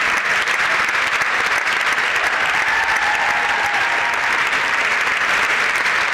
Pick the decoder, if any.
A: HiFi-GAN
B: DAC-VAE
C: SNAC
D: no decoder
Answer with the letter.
D